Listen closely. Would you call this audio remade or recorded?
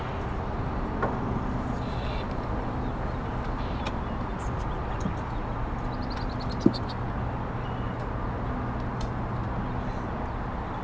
recorded